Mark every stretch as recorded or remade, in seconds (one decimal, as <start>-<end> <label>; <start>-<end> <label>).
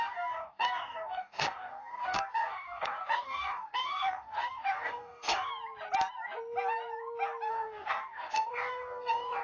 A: 0.0-5.5 remade; 5.5-7.5 recorded; 7.5-9.4 remade